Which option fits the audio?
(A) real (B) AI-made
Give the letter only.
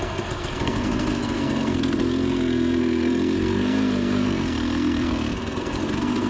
B